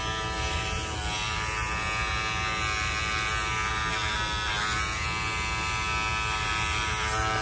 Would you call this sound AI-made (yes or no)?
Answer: no